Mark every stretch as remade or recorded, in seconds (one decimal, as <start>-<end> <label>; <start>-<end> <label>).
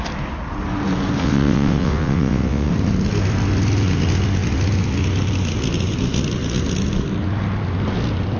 0.0-1.2 recorded; 1.2-2.7 remade; 2.7-8.4 recorded